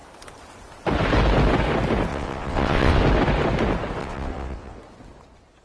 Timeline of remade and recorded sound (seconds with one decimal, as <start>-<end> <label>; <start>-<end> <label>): 0.0-2.1 recorded; 2.1-3.0 remade; 3.0-4.0 recorded; 4.0-4.8 remade; 4.8-5.6 recorded